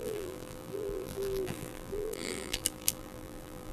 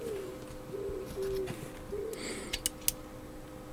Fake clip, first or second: first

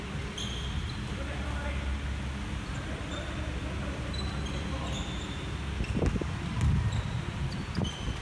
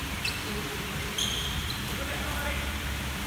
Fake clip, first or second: second